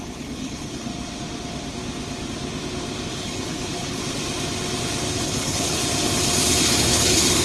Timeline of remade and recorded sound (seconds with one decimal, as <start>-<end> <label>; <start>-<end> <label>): 0.0-0.9 remade; 0.9-3.1 recorded; 3.1-4.0 remade; 4.0-5.1 recorded; 5.1-5.8 remade; 5.8-6.8 recorded; 6.8-7.4 remade